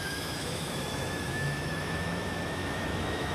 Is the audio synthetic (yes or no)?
yes